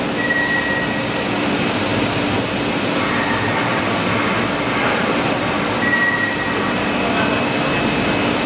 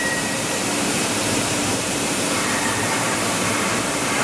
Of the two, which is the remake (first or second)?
second